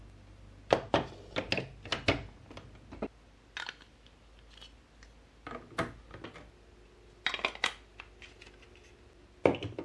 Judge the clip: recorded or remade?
recorded